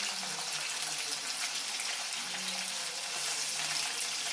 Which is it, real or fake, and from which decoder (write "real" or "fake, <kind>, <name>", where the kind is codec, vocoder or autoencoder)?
real